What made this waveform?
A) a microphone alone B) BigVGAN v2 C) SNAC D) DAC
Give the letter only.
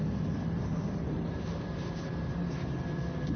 A